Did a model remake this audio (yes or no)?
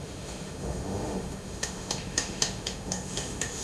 yes